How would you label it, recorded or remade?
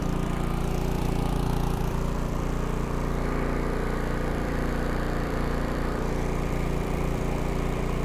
remade